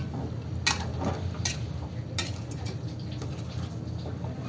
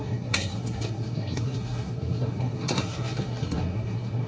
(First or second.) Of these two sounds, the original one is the first